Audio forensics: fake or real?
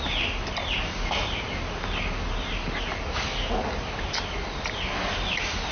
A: real